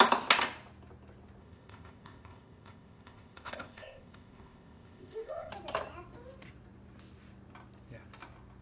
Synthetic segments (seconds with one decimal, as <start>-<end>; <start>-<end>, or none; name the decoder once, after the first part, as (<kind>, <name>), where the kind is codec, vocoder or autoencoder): 1.4-5.5 (codec, ZipCodec)